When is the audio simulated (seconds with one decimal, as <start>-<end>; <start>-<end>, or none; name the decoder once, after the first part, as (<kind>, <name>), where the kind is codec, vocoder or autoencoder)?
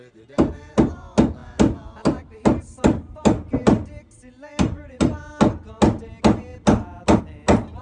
none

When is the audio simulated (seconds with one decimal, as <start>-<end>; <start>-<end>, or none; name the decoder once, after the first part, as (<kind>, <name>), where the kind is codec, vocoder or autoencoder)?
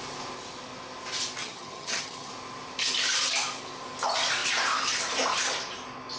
1.4-2.3 (vocoder, HiFi-GAN)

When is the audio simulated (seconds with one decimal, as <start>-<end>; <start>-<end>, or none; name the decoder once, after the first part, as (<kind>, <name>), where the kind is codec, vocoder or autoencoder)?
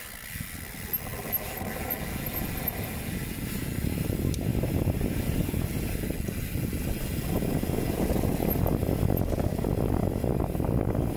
none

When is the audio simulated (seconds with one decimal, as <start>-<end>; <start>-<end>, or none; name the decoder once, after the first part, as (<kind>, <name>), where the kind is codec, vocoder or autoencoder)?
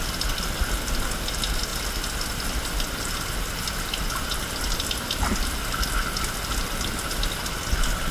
none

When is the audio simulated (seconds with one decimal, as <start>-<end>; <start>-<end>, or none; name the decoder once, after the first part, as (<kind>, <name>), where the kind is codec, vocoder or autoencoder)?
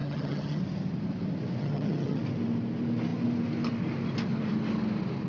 0.0-0.6 (vocoder, HiFi-GAN); 1.6-2.2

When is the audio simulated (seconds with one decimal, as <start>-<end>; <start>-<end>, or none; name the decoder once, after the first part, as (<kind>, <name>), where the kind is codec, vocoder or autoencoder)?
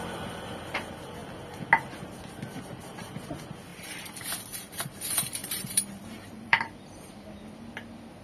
3.7-4.9 (vocoder, BigVGAN v2); 5.4-6.6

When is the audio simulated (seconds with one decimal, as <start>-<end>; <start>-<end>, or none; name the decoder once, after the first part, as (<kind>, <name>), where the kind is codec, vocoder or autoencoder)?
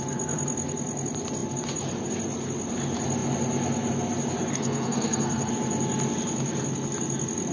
4.5-5.5 (codec, SNAC)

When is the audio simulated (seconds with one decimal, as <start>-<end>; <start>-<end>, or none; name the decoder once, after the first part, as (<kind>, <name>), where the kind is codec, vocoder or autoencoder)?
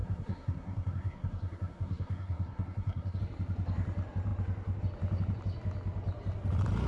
0.0-3.2 (codec, SNAC)